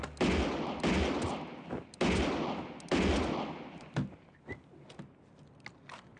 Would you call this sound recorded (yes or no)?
yes